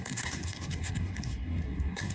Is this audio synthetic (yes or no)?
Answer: yes